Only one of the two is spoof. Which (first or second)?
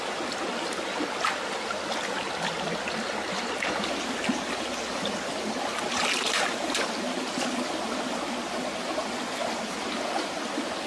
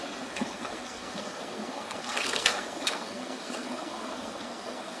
second